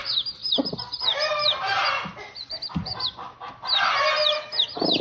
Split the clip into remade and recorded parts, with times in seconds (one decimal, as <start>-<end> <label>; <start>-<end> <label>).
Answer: 0.0-0.4 remade; 0.4-1.3 recorded; 1.3-1.8 remade; 1.8-4.0 recorded; 4.0-5.0 remade